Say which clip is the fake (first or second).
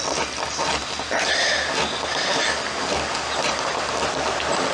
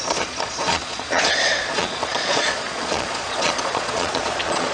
second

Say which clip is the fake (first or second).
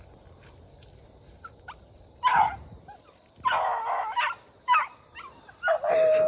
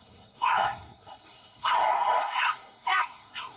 second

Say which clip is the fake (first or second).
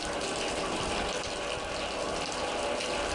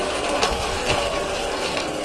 second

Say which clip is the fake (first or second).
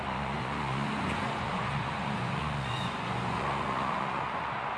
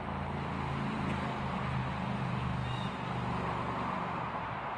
first